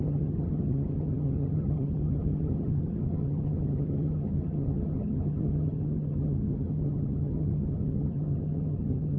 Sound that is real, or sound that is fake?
fake